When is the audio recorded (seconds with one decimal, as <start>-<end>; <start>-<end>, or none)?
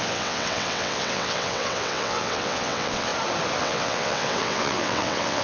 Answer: 3.1-3.6